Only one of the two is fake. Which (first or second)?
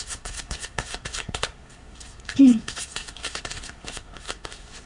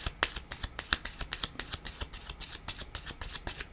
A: first